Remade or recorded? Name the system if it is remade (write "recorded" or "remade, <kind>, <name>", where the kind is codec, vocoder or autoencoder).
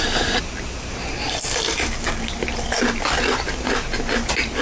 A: recorded